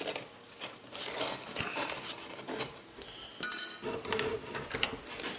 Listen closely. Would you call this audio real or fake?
real